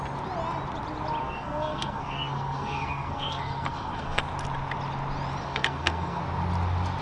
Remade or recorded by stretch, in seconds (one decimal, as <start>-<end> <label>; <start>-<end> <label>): 0.0-1.2 recorded; 1.2-4.2 remade; 4.2-5.4 recorded; 5.4-6.2 remade; 6.2-7.0 recorded